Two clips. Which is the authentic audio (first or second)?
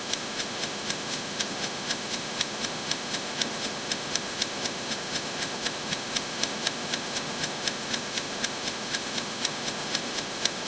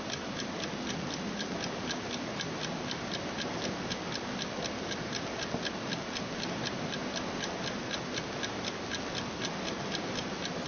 second